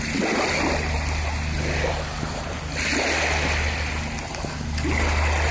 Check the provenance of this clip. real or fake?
real